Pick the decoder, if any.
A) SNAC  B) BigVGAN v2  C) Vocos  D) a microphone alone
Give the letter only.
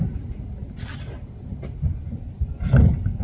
D